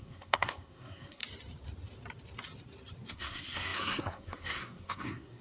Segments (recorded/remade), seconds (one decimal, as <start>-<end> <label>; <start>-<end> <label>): 0.0-1.2 remade; 1.2-3.1 recorded; 3.1-5.4 remade

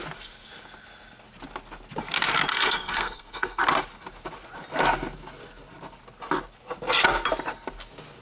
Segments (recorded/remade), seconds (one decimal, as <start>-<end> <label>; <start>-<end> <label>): 0.0-2.5 recorded; 2.5-3.6 remade; 3.6-8.2 recorded

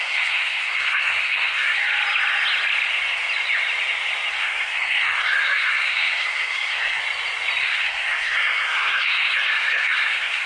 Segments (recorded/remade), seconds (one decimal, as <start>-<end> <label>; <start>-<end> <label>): 0.0-1.8 remade; 1.8-4.3 recorded; 4.3-7.0 remade; 7.0-7.6 recorded; 7.6-10.5 remade

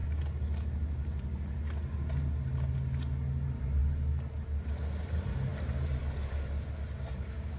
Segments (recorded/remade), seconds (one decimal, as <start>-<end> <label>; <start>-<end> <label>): 0.0-7.6 recorded

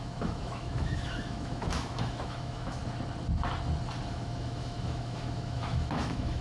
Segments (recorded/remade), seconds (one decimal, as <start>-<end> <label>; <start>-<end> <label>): 0.0-2.8 remade; 2.8-4.1 recorded; 4.1-6.4 remade